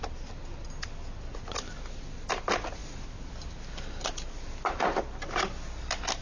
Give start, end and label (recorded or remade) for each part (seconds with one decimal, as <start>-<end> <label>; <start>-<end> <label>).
0.0-6.2 recorded